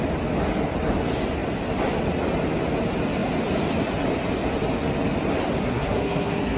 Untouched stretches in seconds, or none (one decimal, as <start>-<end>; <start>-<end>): 0.0-5.6